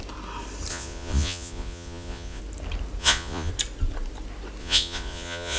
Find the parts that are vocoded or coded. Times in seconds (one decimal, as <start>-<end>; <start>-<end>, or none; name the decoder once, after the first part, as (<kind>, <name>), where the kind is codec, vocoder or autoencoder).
0.7-2.4 (vocoder, Vocos); 3.0-3.5; 4.6-5.6